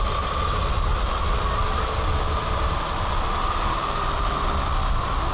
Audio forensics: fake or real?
real